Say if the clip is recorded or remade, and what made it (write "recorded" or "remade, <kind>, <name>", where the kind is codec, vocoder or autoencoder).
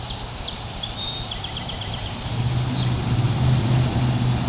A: recorded